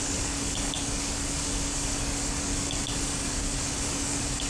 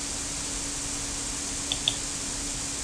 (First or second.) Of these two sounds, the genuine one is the second